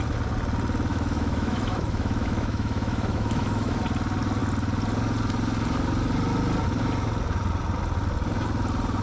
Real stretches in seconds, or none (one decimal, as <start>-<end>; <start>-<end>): 0.0-0.9; 3.8-9.0

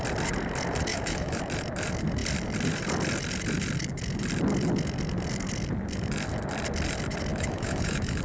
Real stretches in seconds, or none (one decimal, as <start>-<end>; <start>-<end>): 0.0-0.9; 1.4-7.3